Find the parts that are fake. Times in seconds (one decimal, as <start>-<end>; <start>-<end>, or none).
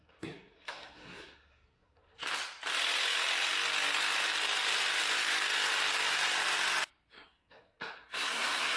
0.0-2.2; 7.1-8.8